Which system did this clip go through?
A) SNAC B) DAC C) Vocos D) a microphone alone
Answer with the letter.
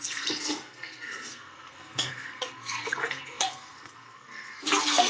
A